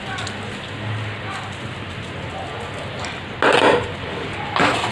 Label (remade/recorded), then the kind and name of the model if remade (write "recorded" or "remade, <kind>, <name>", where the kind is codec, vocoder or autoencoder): recorded